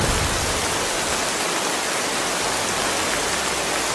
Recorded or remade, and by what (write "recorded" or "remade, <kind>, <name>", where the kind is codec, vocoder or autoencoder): recorded